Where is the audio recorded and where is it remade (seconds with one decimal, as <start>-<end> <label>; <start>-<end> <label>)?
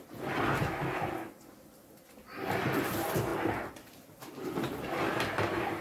0.0-5.8 recorded